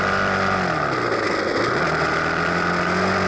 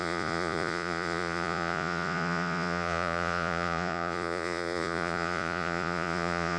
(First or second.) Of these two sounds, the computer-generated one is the second